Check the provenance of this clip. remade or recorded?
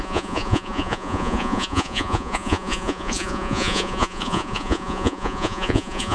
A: remade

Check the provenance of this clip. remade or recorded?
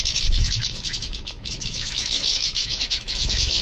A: remade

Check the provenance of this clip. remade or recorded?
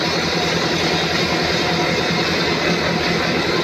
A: recorded